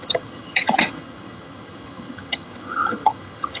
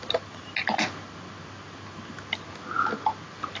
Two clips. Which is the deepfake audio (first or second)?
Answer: first